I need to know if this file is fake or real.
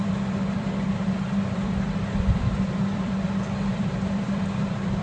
fake